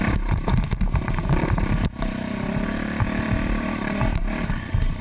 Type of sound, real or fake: fake